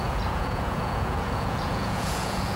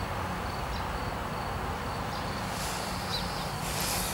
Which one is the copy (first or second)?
first